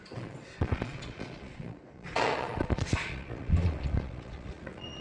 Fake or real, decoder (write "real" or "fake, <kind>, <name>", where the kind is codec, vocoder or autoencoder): fake, vocoder, Vocos